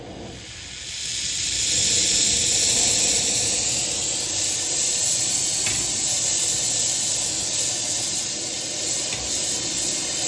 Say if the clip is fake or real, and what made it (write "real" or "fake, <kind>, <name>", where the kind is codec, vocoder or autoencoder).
real